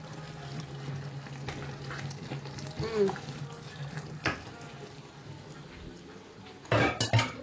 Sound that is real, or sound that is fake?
real